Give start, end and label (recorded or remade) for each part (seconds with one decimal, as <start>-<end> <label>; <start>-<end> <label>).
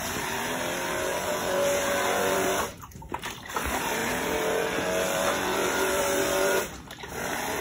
0.0-7.6 remade